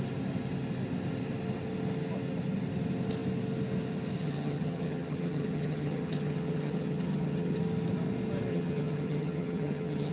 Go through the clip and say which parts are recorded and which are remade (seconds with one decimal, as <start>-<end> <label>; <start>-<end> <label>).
0.0-4.2 recorded; 4.2-7.6 remade; 7.6-8.5 recorded; 8.5-10.1 remade